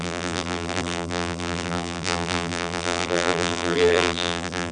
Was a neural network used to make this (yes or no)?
yes